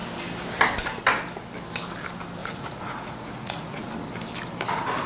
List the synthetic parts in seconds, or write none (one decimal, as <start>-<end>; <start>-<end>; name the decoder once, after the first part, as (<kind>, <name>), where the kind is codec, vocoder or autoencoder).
2.4-3.9 (vocoder, Vocos)